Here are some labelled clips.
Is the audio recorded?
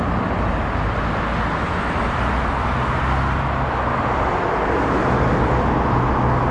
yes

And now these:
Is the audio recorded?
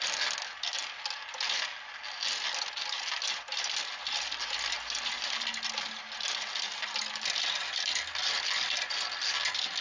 yes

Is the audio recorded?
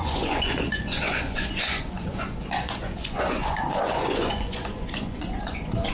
no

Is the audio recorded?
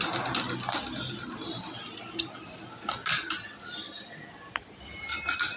yes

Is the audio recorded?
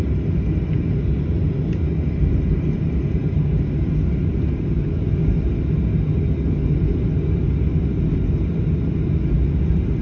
yes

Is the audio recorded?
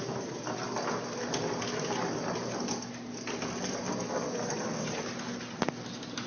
yes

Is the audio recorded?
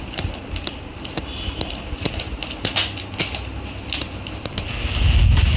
yes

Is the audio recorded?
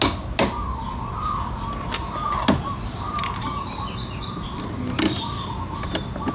yes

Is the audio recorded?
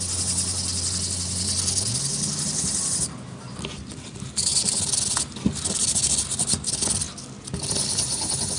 yes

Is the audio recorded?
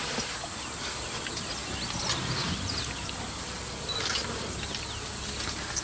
yes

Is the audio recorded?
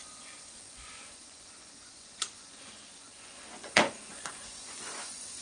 no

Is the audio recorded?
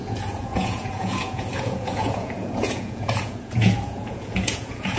no